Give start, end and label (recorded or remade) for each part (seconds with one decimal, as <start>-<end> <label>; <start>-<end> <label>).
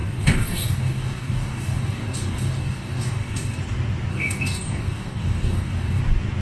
0.0-3.6 remade; 3.6-4.1 recorded; 4.1-6.0 remade; 6.0-6.4 recorded